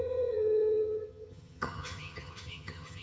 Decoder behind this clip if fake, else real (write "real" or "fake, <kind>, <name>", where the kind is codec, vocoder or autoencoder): fake, vocoder, HiFi-GAN